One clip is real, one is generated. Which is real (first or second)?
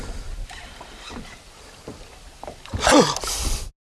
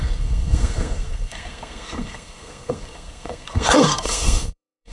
first